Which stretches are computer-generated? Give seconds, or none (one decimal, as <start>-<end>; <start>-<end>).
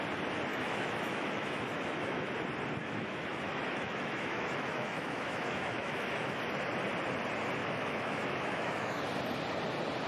0.5-2.3; 2.8-6.4; 7.6-9.0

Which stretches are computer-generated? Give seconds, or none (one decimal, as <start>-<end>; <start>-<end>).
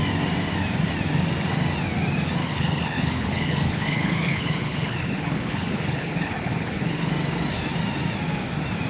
2.4-7.1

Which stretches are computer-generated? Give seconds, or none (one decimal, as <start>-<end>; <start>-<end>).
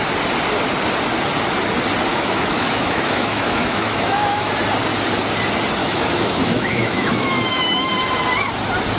2.1-4.5; 5.8-7.9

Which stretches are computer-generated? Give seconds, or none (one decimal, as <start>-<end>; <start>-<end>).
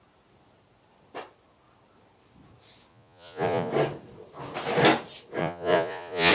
2.9-3.7; 5.4-6.3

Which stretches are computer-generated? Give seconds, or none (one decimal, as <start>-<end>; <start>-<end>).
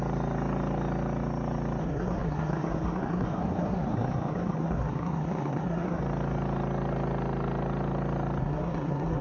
1.8-6.0; 8.4-9.2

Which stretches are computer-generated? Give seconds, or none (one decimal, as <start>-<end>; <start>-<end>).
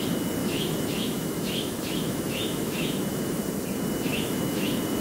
0.4-3.4; 4.1-5.0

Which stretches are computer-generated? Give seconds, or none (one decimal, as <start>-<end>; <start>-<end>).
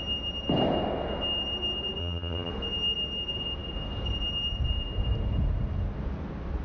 2.0-2.5